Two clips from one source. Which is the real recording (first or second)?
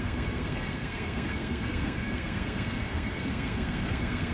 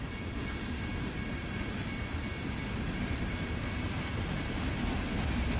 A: second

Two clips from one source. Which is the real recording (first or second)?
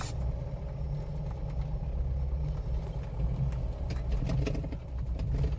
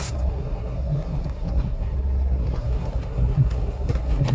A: first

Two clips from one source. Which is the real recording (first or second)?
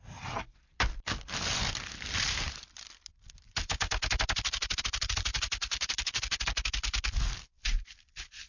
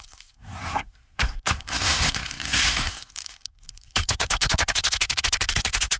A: first